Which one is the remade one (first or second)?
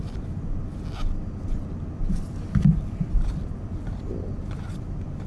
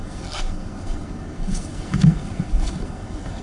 second